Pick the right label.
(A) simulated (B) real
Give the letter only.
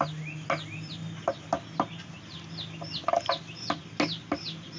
B